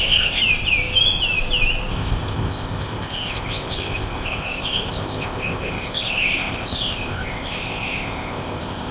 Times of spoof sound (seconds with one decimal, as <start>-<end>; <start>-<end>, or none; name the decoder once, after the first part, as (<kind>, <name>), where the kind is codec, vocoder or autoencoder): 0.0-0.4 (codec, ZipCodec); 1.9-8.9